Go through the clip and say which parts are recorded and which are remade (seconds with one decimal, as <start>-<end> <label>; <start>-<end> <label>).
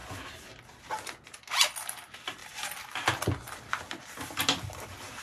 0.0-0.8 remade; 0.8-2.4 recorded; 2.4-4.4 remade; 4.4-5.2 recorded